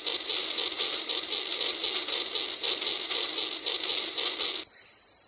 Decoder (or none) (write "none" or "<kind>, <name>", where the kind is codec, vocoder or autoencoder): none